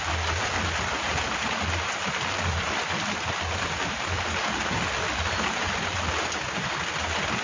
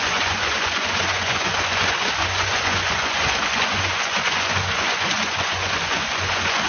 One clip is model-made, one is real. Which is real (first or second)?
first